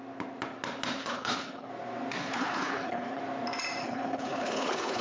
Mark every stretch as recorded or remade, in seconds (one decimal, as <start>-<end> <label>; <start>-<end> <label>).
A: 0.0-1.0 recorded; 1.0-1.7 remade; 1.7-2.2 recorded; 2.2-3.2 remade; 3.2-3.8 recorded; 3.8-5.0 remade